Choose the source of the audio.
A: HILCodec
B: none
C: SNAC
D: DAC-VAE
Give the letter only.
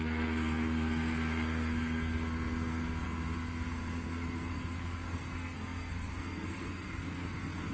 C